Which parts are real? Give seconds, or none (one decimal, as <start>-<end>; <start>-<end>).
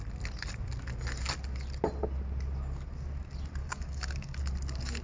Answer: 0.0-3.6; 4.4-5.0